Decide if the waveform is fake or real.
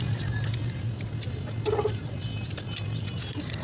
real